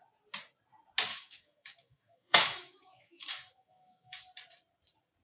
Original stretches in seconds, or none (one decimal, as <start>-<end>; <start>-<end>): 0.0-1.1; 4.2-5.2